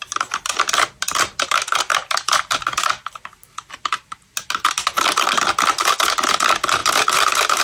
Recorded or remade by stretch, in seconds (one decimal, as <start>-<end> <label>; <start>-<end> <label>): 0.0-1.9 recorded; 1.9-2.9 remade; 2.9-6.8 recorded; 6.8-7.6 remade